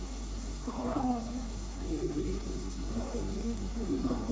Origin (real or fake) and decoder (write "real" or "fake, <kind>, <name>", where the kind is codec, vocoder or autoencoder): fake, codec, SNAC